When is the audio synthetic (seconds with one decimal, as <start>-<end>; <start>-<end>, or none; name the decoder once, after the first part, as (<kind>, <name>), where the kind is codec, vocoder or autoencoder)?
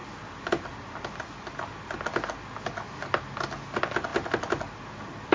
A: none